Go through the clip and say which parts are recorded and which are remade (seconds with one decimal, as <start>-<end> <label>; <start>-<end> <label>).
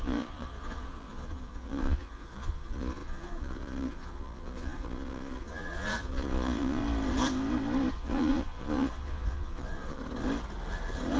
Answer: 0.0-6.8 remade; 6.8-7.9 recorded; 7.9-10.0 remade; 10.0-11.2 recorded